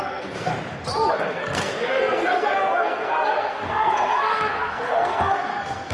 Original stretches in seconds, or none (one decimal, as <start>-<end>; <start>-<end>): 0.5-1.1